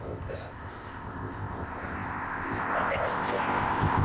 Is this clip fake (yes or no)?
yes